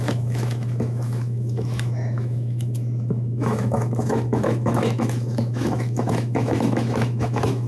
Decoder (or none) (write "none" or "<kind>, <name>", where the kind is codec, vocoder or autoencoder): autoencoder, DAC-VAE